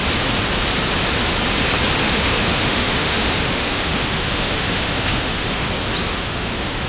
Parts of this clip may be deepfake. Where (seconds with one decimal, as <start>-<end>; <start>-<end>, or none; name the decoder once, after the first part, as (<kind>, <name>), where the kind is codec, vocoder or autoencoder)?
2.0-5.6 (autoencoder, DAC-VAE); 6.1-6.9

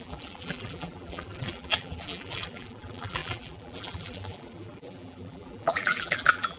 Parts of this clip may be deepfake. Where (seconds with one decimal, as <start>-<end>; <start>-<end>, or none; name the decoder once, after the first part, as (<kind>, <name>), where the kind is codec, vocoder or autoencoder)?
0.0-6.6 (vocoder, BigVGAN v2)

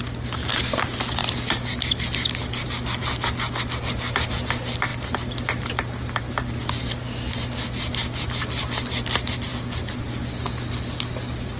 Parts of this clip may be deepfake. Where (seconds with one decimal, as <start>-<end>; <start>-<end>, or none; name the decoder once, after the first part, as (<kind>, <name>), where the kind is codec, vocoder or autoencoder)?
none

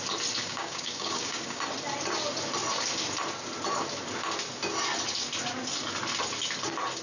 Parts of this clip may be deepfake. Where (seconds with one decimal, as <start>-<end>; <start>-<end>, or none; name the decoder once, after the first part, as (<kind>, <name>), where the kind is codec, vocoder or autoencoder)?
0.4-1.6 (codec, DAC)

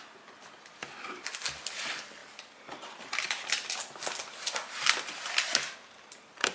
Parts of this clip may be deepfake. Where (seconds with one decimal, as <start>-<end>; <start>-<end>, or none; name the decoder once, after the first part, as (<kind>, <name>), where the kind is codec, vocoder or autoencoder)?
none

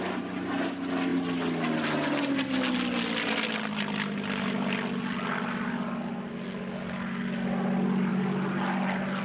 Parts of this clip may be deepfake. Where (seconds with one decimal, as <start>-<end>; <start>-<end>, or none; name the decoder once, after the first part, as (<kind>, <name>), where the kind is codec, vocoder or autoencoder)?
none